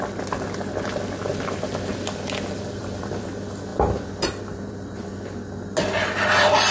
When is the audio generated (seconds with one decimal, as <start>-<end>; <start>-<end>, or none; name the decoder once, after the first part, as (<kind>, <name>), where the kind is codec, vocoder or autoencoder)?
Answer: 1.3-1.9 (vocoder, BigVGAN v2); 2.8-3.3; 3.7-5.1